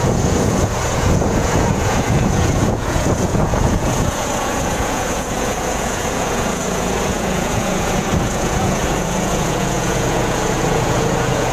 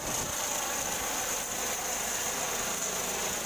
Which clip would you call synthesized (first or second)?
first